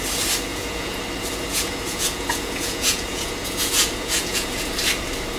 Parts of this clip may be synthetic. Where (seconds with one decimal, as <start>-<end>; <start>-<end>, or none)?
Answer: 0.5-1.0; 1.5-4.7